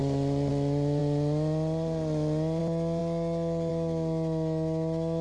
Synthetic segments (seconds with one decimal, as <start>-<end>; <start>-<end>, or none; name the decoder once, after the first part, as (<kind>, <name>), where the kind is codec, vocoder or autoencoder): none